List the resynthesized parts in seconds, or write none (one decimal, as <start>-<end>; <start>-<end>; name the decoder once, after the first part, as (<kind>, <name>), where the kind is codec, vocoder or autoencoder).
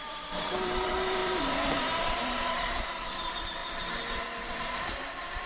0.0-5.5 (vocoder, BigVGAN v2)